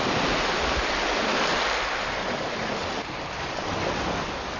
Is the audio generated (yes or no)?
no